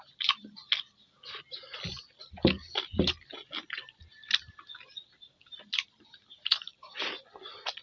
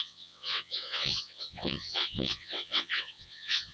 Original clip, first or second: first